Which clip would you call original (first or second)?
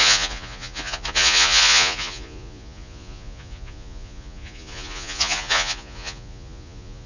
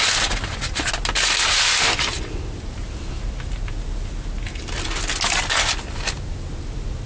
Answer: second